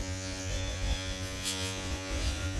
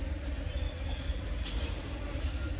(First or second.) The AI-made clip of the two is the first